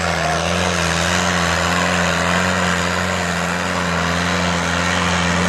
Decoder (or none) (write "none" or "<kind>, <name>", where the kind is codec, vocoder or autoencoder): none